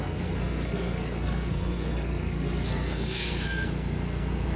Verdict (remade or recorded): remade